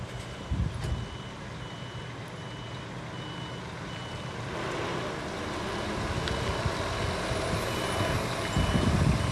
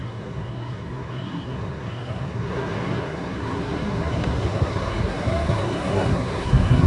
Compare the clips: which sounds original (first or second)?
first